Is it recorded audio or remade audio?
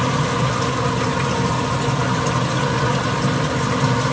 recorded